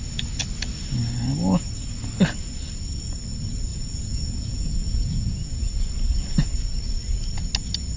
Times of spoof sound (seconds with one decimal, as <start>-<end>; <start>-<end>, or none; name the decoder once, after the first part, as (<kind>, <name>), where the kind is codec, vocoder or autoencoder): 3.7-5.9 (vocoder, Vocos)